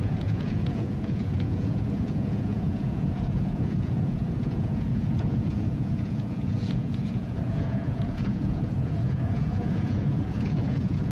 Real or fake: fake